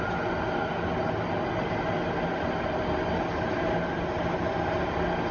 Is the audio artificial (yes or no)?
no